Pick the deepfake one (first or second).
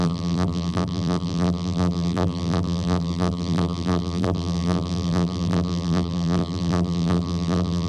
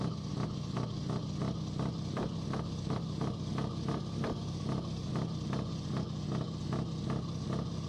first